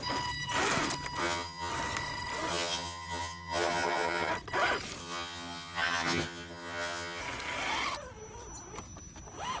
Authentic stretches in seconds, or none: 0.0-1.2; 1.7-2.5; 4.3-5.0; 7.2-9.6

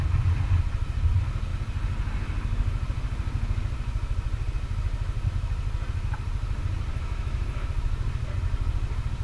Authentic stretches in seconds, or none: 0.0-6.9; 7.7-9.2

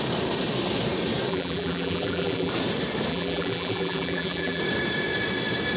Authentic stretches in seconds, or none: 0.0-1.3; 2.5-3.1; 4.6-5.8

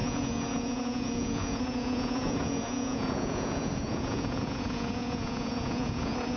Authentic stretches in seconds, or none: none

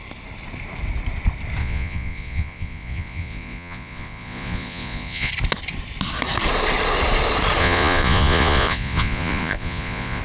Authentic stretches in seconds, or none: 0.0-1.6; 5.3-7.6

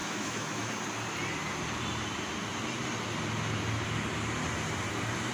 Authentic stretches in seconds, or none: 0.7-5.3